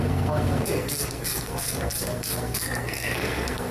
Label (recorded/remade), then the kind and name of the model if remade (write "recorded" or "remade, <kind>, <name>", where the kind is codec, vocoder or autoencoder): remade, codec, SNAC